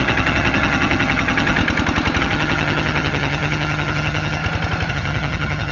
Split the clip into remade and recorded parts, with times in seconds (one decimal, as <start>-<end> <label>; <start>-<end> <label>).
0.0-1.6 remade; 1.6-2.2 recorded; 2.2-4.4 remade; 4.4-4.9 recorded; 4.9-5.7 remade

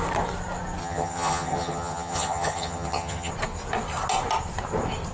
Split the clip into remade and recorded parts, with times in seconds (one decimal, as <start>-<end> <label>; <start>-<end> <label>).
0.0-0.8 recorded; 0.8-3.3 remade; 3.3-5.1 recorded